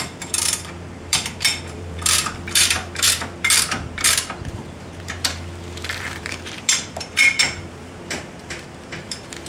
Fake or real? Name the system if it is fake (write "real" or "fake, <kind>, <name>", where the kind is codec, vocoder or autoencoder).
fake, vocoder, BigVGAN v2